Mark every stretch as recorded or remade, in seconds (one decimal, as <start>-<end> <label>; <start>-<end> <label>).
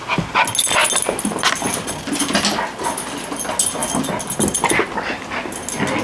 0.0-6.0 recorded